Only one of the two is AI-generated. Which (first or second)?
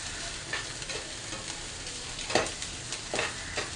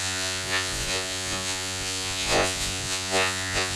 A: second